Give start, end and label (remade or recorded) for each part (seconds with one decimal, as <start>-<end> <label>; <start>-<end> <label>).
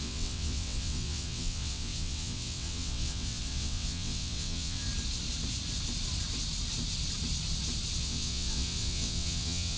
0.0-4.9 remade; 4.9-8.0 recorded; 8.0-9.8 remade